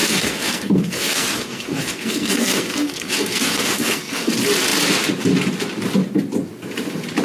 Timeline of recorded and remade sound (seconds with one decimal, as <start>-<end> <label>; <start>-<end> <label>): 0.0-4.3 remade; 4.3-7.2 recorded